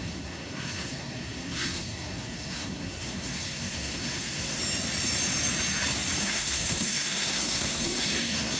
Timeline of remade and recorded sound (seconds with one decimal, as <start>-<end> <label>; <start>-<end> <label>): 0.0-4.6 remade; 4.6-6.2 recorded; 6.2-8.6 remade